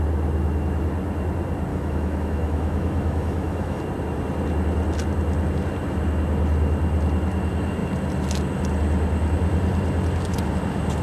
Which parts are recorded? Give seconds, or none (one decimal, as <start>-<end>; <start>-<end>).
0.0-1.7; 3.8-11.0